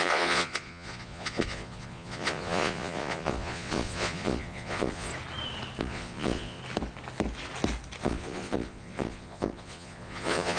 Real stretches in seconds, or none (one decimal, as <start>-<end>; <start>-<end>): 5.1-5.8; 6.6-8.0

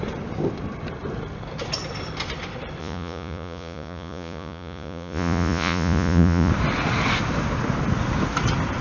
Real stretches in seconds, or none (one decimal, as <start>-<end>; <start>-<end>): 0.0-2.8; 6.5-8.8

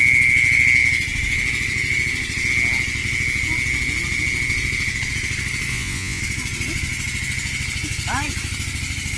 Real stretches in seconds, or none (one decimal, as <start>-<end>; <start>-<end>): 0.0-5.7; 6.2-9.2

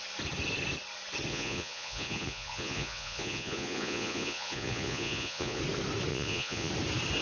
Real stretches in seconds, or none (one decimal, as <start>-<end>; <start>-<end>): 0.0-1.3; 5.6-6.1; 6.7-7.2

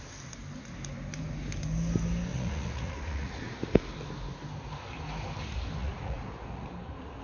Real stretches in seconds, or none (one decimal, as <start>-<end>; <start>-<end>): 0.0-2.3; 3.4-5.8; 6.7-7.2

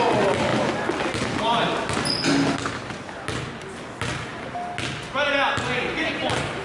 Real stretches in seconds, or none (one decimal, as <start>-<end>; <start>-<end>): 0.0-6.6

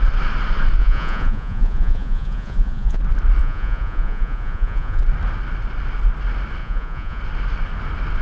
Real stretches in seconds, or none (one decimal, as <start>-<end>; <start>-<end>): 0.0-0.8; 3.0-3.4; 5.0-6.6; 7.2-8.2

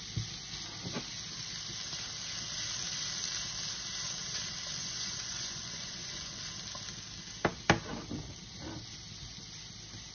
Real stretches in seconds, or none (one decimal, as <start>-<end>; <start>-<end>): 0.0-4.8; 6.4-10.1